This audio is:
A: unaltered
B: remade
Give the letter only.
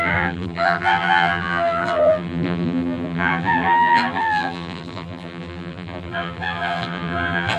B